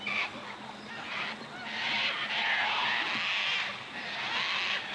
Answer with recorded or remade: recorded